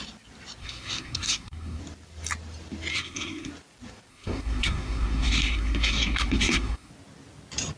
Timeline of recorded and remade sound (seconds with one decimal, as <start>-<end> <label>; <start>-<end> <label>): 0.0-0.6 recorded; 0.6-1.8 remade; 1.8-2.9 recorded; 2.9-3.5 remade; 3.5-4.1 recorded; 4.1-6.9 remade; 6.9-7.8 recorded